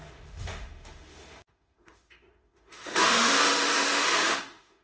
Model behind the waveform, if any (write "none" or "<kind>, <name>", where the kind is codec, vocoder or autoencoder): autoencoder, DAC-VAE